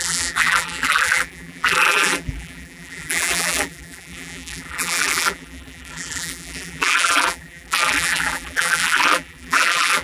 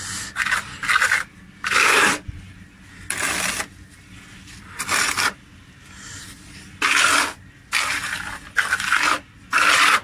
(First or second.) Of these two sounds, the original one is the second